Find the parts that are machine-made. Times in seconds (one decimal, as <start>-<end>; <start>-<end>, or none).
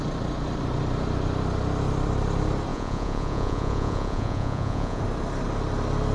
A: 2.7-5.0